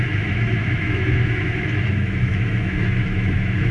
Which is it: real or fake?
fake